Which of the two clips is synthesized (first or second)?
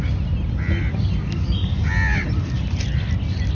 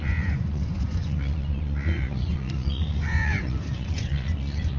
second